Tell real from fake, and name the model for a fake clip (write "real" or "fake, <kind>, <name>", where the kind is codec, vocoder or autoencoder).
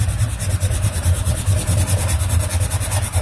real